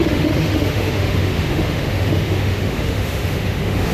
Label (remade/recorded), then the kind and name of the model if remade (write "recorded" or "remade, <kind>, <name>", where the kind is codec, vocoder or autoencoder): remade, autoencoder, DAC-VAE